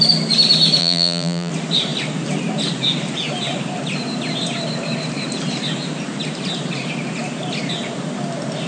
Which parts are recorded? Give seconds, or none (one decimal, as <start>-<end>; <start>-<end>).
0.0-0.8; 1.5-8.7